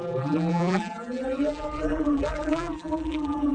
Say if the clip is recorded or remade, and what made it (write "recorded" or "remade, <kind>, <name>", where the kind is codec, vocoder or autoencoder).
remade, vocoder, BigVGAN v2